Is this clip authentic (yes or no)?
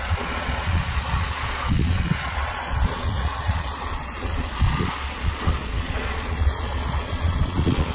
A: no